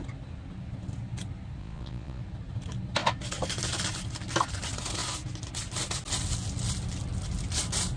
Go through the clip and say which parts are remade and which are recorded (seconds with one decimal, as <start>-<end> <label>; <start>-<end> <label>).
0.0-1.6 recorded; 1.6-2.2 remade; 2.2-8.0 recorded